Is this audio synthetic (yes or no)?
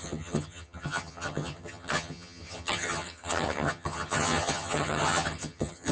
yes